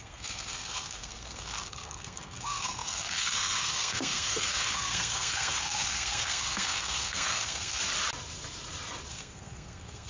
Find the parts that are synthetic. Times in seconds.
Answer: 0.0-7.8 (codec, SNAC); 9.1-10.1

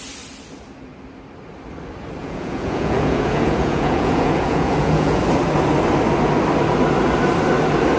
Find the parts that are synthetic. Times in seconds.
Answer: 2.2-5.2 (vocoder, Vocos)

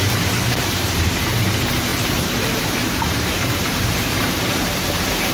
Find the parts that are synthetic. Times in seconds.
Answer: 0.0-5.3 (vocoder, BigVGAN v2)

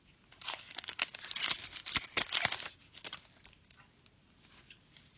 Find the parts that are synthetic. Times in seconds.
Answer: none

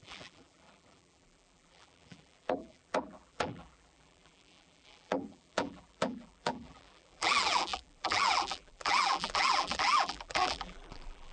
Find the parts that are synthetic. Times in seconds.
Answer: 0.0-11.3 (vocoder, BigVGAN v2)